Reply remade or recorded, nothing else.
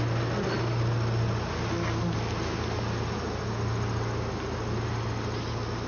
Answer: recorded